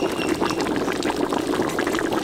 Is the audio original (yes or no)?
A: yes